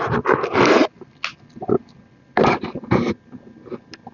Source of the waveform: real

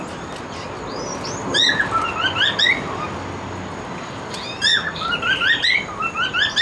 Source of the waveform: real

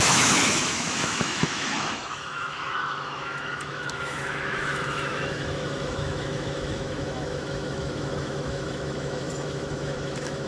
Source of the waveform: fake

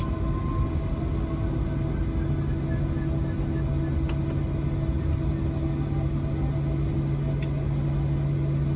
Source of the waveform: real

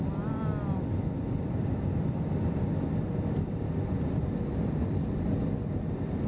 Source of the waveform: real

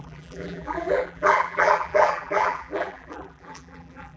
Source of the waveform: fake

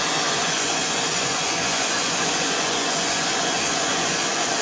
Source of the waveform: fake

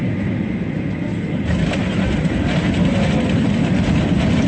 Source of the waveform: real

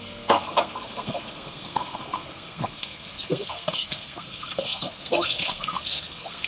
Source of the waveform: fake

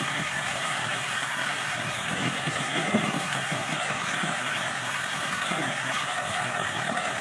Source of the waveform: fake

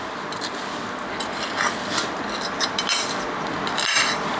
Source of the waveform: real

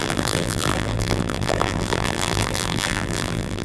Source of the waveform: fake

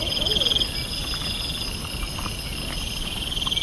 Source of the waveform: real